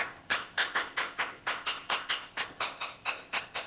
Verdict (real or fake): fake